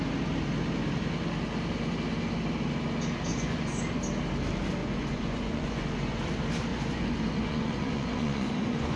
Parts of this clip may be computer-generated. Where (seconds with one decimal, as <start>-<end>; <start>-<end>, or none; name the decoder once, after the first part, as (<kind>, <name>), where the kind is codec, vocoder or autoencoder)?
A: 3.3-3.8 (vocoder, Vocos); 4.8-6.2; 6.7-9.0